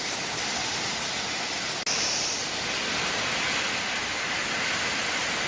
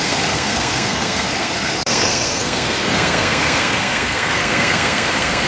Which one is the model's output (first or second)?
second